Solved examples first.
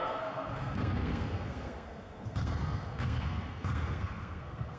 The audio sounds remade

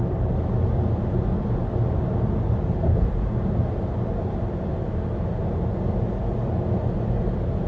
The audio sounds recorded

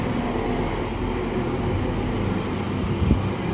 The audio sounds recorded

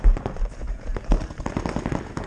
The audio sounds recorded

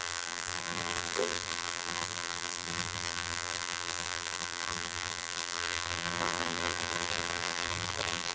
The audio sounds remade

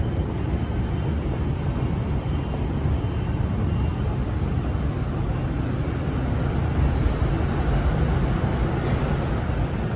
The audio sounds recorded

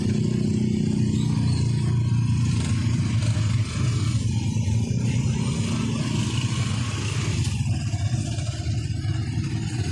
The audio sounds recorded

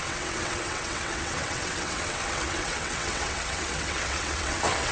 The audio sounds remade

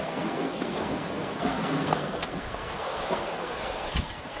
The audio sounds remade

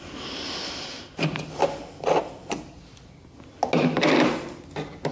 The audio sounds recorded